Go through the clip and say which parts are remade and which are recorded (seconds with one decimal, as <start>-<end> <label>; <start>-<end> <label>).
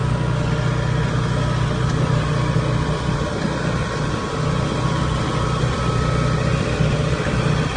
0.0-7.8 recorded